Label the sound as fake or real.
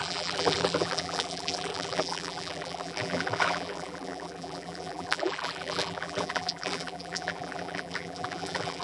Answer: fake